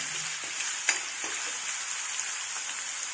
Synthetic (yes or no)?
no